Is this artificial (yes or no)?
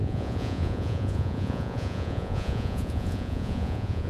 yes